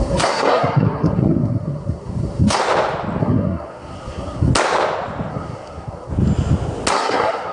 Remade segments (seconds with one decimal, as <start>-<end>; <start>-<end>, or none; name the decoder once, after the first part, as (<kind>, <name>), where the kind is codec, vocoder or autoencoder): 0.0-2.6 (codec, SNAC); 3.2-4.5; 5.3-6.1; 6.9-7.5